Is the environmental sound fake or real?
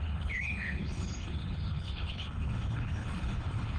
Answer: fake